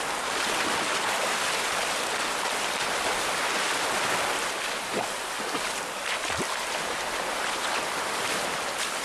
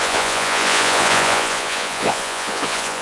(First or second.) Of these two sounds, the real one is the first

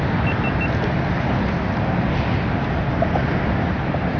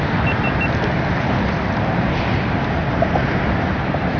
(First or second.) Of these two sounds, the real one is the first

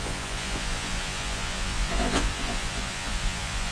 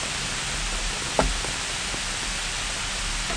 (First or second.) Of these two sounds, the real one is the second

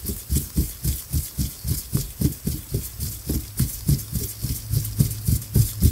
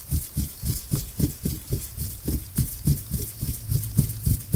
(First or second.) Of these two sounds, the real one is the first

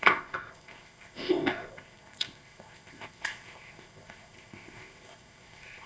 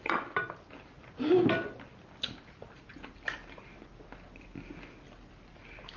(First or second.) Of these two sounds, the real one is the second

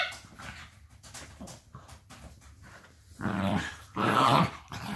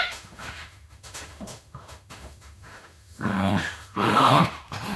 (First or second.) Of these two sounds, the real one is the first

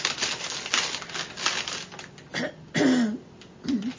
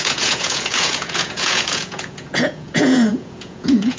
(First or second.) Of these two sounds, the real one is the first